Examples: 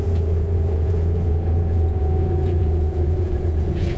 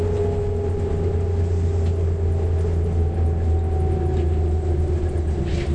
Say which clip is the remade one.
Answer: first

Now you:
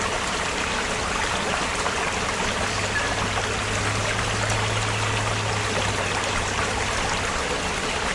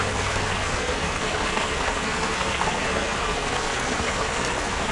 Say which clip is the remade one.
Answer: second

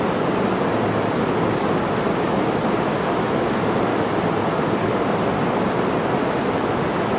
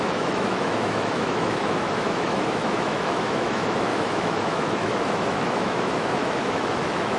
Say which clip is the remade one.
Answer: second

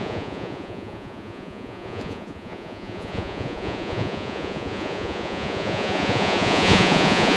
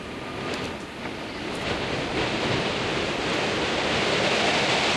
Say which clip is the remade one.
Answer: first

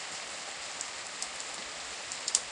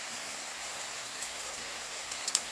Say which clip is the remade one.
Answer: second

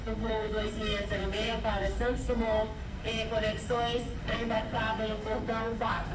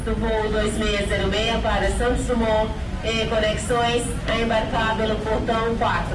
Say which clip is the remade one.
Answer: first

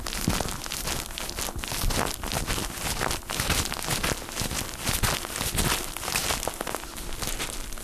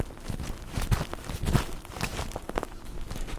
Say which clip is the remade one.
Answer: second